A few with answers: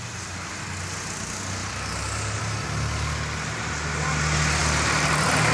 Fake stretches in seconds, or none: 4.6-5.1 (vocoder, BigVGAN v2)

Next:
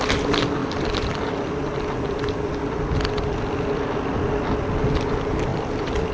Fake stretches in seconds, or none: none